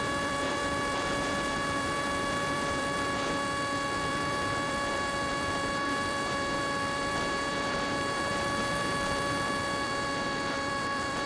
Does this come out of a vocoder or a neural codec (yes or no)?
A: yes